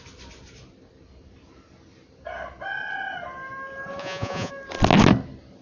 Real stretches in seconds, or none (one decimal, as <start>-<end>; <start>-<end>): 0.0-4.0; 4.5-5.6